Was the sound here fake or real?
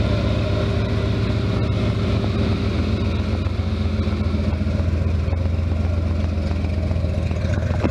real